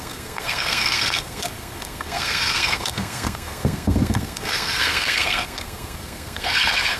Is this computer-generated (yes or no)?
yes